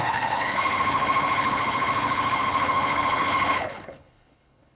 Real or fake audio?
fake